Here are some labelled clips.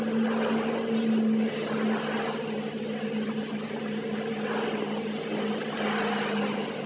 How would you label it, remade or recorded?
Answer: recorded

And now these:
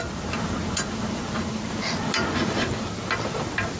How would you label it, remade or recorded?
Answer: recorded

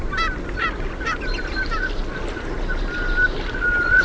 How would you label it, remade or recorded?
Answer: recorded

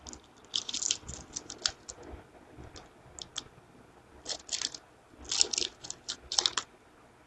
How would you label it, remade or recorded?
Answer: recorded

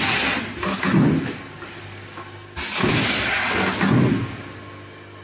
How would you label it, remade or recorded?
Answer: recorded